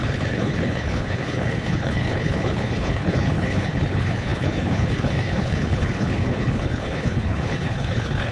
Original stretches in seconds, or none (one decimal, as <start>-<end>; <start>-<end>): none